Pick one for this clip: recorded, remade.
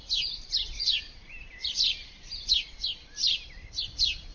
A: remade